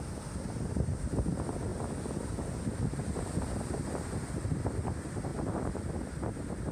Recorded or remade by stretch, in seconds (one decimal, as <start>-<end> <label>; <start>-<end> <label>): 0.0-5.3 recorded; 5.3-5.9 remade; 5.9-6.7 recorded